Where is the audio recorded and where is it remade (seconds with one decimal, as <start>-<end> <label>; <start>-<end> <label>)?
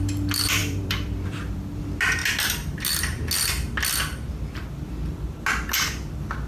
0.0-0.6 recorded; 0.6-1.8 remade; 1.8-6.5 recorded